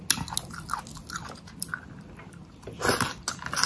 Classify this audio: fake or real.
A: real